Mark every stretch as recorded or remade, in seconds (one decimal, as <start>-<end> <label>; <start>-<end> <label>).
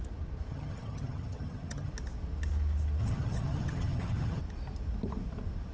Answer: 0.0-0.5 recorded; 0.5-1.9 remade; 1.9-3.0 recorded; 3.0-4.4 remade; 4.4-5.7 recorded